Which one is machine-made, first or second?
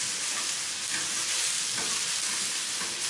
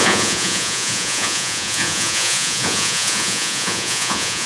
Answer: second